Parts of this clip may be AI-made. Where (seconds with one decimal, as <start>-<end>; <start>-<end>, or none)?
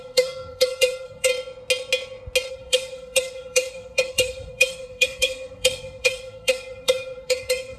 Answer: 0.0-1.3; 2.5-7.8